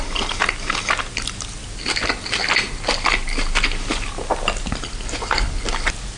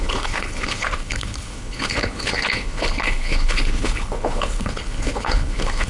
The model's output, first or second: second